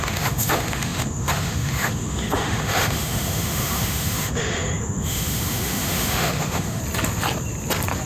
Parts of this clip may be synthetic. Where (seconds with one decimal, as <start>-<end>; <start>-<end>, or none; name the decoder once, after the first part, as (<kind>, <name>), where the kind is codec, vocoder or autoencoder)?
0.0-6.8 (autoencoder, DAC-VAE)